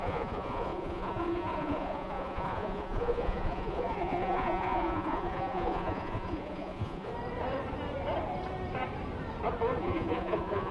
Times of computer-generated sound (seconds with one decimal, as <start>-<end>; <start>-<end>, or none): 0.0-7.1; 9.8-10.7